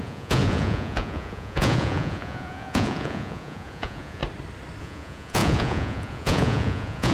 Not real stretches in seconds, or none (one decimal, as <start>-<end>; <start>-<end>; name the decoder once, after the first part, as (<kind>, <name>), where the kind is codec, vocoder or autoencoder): 0.0-4.2 (vocoder, Vocos); 4.8-7.1